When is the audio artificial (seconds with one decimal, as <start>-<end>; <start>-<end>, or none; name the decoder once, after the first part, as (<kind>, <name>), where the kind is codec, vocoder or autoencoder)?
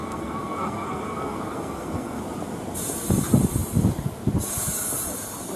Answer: 0.0-2.2 (codec, SNAC)